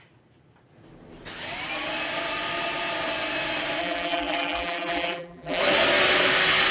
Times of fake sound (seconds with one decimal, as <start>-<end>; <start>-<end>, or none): 3.8-5.6